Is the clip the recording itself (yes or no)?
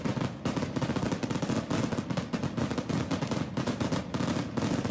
yes